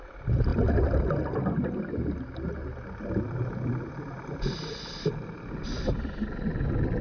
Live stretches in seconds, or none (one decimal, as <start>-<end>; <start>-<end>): 0.0-7.0